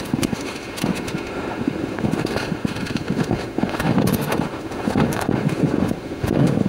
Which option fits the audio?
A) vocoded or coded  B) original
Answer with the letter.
A